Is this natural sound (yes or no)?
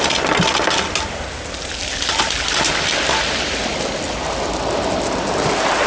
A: yes